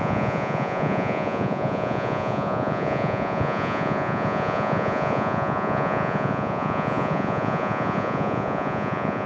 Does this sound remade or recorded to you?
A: remade